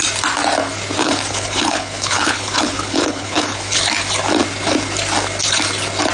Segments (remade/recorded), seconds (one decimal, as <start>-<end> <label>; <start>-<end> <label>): 0.0-1.0 recorded; 1.0-3.8 remade; 3.8-6.1 recorded